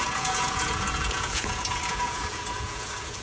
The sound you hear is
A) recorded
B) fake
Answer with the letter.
B